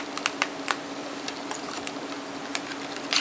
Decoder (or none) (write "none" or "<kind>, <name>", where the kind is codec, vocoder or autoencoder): none